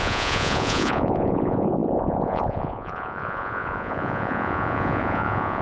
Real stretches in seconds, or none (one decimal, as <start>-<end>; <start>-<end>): none